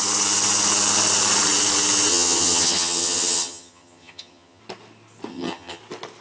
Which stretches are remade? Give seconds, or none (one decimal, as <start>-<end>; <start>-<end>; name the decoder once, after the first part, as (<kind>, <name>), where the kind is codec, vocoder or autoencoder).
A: 2.1-4.6 (vocoder, HiFi-GAN); 5.3-5.8